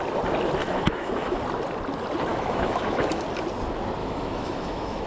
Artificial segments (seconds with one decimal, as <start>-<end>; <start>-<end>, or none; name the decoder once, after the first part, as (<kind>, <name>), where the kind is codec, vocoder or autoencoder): 0.6-1.4 (autoencoder, DAC-VAE); 2.3-3.2; 4.0-5.1